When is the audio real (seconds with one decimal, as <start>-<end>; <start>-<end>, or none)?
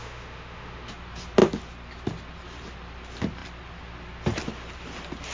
0.9-5.3